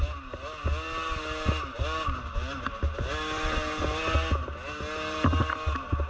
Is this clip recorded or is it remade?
recorded